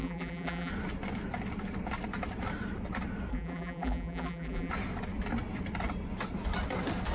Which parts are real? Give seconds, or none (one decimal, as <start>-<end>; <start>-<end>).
0.7-3.3; 4.7-7.1